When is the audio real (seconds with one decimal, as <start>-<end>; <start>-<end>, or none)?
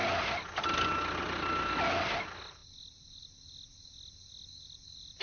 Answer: 0.0-5.2